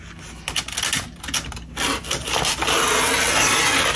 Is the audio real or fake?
real